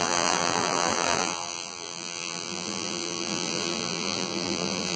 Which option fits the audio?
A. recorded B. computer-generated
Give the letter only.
B